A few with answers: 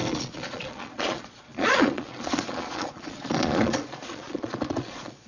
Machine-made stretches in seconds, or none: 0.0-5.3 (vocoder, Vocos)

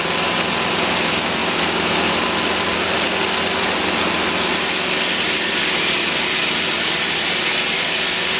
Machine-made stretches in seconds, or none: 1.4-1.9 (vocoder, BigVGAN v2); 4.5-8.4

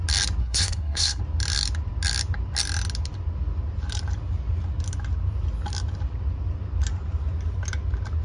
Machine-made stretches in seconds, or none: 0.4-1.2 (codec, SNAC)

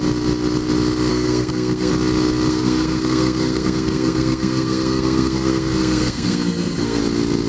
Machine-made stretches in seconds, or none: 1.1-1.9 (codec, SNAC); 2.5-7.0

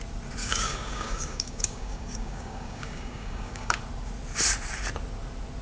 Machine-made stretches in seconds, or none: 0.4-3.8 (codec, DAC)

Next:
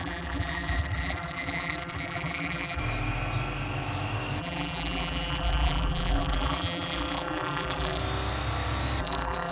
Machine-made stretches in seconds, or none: 0.0-2.8 (vocoder, BigVGAN v2); 4.4-8.0; 9.0-9.5

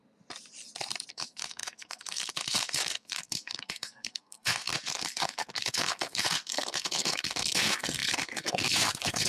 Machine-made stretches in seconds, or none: 1.1-9.3 (codec, SNAC)